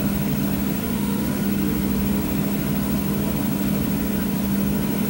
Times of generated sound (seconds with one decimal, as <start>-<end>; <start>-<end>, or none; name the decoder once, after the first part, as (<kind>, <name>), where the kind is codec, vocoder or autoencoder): 0.8-1.4 (autoencoder, DAC-VAE)